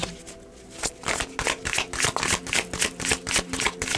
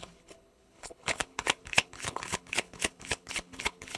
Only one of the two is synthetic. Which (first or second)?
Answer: second